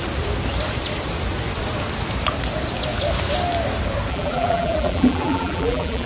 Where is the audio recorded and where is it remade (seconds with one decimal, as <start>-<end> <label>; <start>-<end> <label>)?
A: 0.0-4.1 recorded; 4.1-6.1 remade